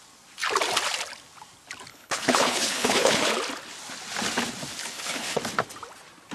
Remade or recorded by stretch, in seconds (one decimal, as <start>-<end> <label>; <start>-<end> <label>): 0.0-1.9 recorded; 1.9-3.3 remade; 3.3-4.8 recorded; 4.8-5.4 remade; 5.4-6.3 recorded